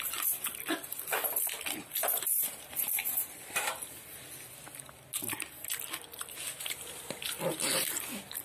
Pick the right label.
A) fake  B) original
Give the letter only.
B